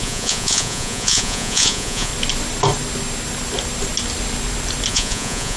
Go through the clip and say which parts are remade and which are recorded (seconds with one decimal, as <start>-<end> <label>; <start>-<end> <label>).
0.0-2.1 remade; 2.1-4.9 recorded; 4.9-5.6 remade